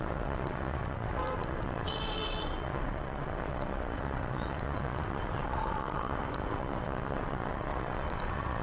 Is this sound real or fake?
fake